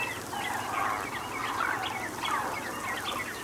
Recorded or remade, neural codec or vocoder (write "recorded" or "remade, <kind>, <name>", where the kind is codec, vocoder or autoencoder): recorded